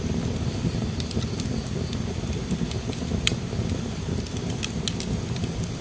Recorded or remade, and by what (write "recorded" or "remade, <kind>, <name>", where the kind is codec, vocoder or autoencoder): recorded